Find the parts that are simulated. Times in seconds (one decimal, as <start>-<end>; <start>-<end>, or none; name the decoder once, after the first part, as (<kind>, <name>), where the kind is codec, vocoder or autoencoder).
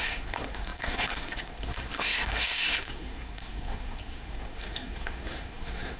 0.0-6.0 (codec, SNAC)